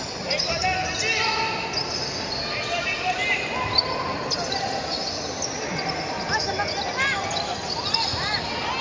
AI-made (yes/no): no